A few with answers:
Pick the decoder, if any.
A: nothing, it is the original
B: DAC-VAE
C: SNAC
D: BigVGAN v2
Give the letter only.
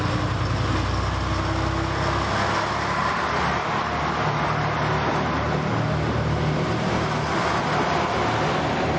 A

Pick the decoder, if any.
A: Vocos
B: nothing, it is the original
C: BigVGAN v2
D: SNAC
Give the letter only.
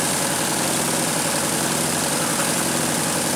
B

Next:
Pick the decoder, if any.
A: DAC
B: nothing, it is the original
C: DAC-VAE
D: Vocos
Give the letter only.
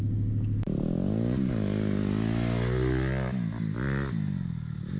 B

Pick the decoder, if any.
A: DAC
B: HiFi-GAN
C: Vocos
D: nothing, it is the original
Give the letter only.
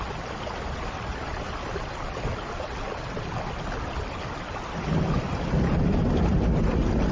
D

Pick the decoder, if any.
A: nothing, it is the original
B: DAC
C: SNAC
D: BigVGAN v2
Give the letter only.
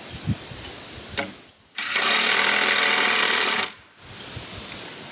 A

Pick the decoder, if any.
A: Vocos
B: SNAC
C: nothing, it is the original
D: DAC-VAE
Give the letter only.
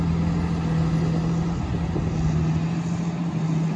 C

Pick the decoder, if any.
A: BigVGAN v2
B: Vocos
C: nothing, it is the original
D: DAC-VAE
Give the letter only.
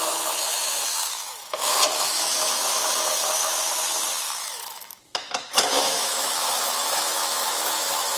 D